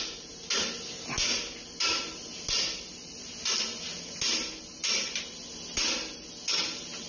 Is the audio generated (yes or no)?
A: no